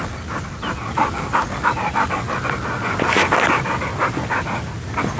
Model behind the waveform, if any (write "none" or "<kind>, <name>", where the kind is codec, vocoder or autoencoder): none